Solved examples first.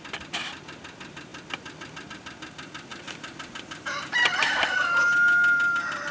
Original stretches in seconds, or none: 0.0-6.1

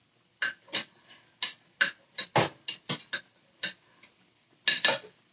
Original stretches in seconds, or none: 0.0-5.3